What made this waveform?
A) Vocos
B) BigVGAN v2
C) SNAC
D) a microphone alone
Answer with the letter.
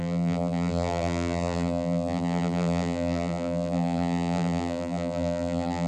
B